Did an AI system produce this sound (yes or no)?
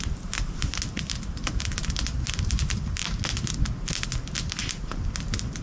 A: no